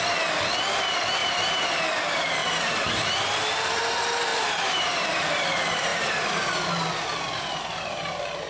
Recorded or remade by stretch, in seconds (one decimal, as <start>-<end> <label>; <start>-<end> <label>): 0.0-1.2 recorded; 1.2-1.8 remade; 1.8-2.4 recorded; 2.4-3.8 remade; 3.8-4.3 recorded; 4.3-5.3 remade; 5.3-5.9 recorded; 5.9-6.5 remade; 6.5-8.5 recorded